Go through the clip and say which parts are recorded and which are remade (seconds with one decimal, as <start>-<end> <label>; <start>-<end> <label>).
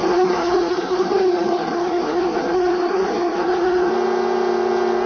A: 0.0-3.9 remade; 3.9-5.1 recorded